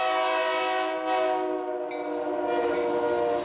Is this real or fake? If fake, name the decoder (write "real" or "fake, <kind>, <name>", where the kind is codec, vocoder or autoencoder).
real